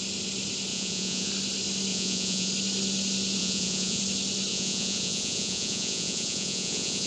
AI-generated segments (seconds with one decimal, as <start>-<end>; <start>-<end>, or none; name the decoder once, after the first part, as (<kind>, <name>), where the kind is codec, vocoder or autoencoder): 0.7-1.3 (vocoder, Vocos); 1.9-2.5; 3.4-4.0; 4.5-7.1